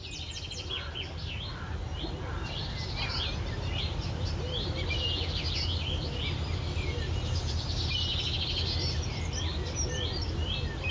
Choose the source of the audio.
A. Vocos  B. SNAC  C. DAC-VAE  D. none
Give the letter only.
D